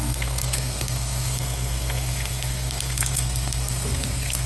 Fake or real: fake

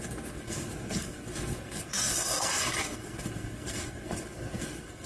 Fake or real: fake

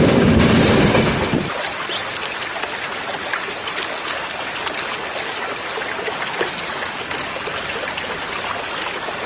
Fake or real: real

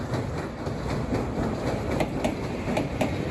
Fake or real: real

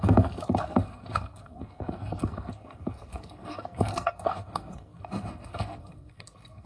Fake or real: fake